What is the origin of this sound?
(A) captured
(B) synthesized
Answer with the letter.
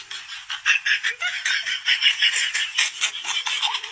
A